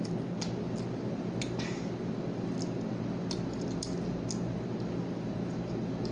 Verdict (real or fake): real